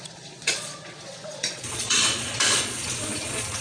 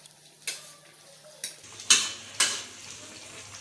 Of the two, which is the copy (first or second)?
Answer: first